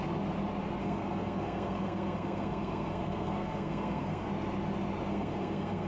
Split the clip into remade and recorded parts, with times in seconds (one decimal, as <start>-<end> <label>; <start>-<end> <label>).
0.0-0.8 recorded; 0.8-4.3 remade; 4.3-5.1 recorded; 5.1-5.9 remade